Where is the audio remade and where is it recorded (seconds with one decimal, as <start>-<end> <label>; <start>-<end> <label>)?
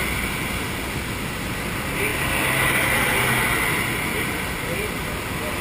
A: 0.0-5.6 recorded